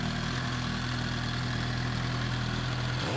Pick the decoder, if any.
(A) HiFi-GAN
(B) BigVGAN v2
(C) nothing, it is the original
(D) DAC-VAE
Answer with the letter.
C